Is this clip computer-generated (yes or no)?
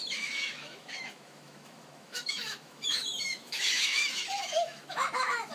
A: yes